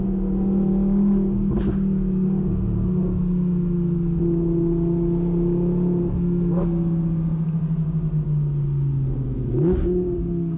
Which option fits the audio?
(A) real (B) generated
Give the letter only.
A